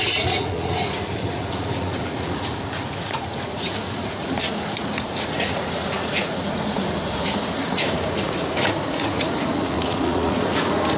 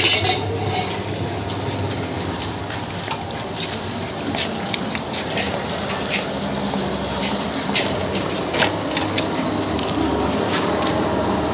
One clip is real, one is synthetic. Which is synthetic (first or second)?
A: first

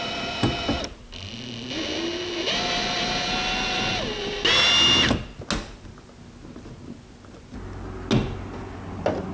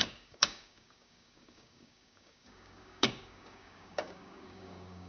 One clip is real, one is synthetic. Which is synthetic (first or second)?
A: second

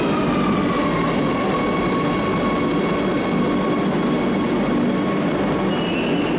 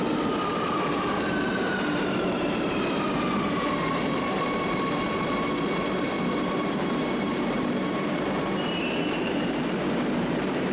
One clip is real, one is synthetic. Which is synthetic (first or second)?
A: second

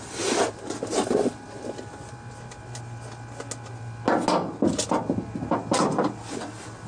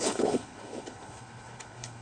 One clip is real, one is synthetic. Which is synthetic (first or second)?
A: second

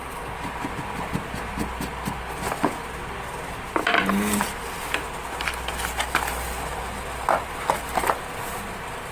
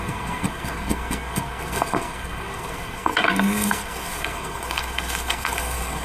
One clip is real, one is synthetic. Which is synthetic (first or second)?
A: second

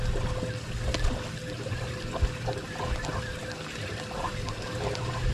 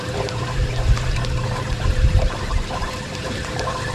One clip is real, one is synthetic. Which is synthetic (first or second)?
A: second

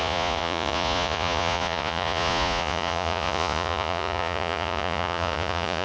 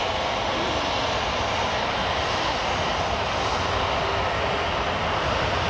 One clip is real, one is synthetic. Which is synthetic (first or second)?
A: first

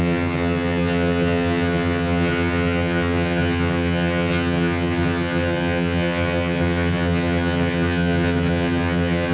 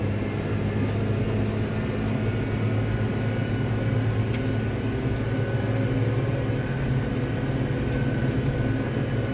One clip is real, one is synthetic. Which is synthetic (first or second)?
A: first